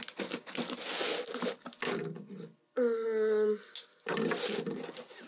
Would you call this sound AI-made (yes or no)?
no